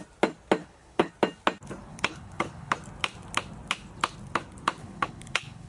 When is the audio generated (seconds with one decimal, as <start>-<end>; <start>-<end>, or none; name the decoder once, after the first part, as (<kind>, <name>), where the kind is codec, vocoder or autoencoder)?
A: 0.6-1.1 (codec, HILCodec); 1.9-2.7; 4.8-5.7